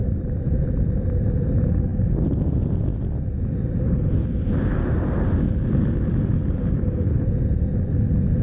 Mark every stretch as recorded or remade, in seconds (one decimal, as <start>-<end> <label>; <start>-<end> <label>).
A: 0.0-8.4 recorded